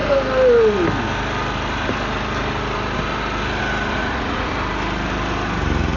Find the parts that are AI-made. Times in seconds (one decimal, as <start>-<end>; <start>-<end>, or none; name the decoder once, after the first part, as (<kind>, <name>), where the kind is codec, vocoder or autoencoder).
4.0-4.5 (vocoder, Vocos)

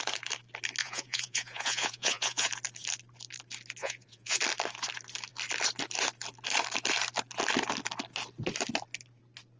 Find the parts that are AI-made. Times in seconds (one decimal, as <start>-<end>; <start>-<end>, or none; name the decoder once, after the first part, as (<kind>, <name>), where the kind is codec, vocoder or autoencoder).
0.8-2.5 (vocoder, Vocos); 3.8-4.4